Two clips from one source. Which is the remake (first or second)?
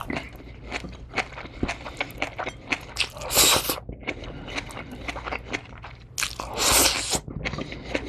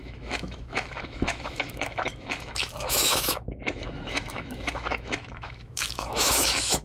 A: second